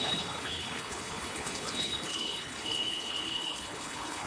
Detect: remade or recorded remade